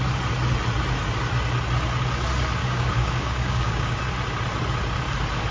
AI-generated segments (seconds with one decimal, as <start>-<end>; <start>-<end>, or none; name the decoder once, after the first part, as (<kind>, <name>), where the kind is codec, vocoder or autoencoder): 2.6-4.0 (codec, DAC)